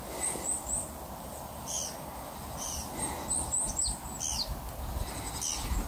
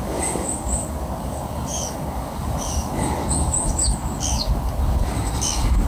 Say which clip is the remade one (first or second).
second